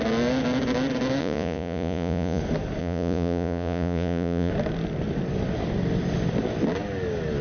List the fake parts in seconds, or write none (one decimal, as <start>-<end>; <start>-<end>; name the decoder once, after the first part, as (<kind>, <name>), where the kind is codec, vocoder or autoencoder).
1.2-2.4 (vocoder, Vocos); 2.8-4.5